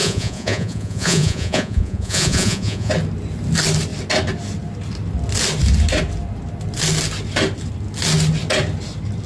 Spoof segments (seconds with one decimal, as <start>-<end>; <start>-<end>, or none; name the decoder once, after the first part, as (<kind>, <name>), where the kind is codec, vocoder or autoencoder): 0.0-2.9 (vocoder, Vocos)